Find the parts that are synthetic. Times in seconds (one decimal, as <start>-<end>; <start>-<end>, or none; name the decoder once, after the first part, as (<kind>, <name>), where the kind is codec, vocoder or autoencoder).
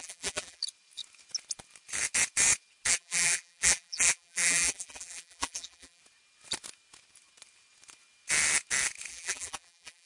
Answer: 0.0-0.6 (vocoder, BigVGAN v2); 2.9-6.0; 9.1-10.1